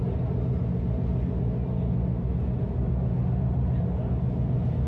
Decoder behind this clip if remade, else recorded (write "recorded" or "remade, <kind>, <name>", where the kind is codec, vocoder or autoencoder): recorded